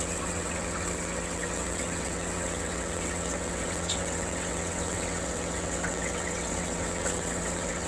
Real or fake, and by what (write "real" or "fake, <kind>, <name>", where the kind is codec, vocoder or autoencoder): fake, vocoder, WaveNeXt